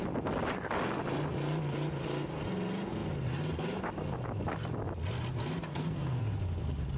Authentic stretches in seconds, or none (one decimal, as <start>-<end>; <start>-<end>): 0.0-5.7; 6.2-7.0